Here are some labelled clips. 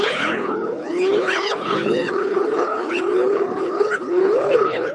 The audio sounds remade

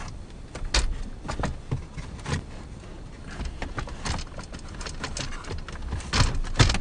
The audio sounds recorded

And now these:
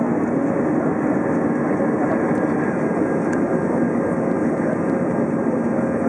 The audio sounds recorded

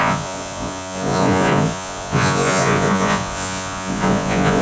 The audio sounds remade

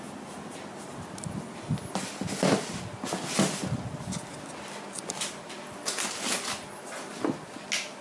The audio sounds recorded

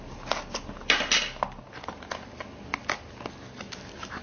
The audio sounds recorded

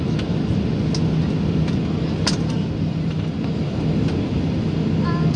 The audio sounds recorded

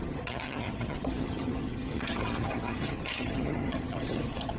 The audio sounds remade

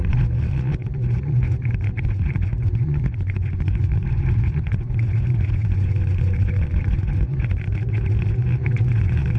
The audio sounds remade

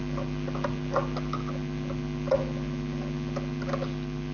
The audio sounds recorded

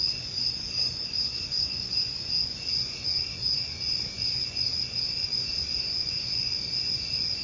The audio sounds remade